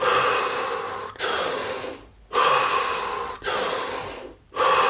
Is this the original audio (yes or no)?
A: yes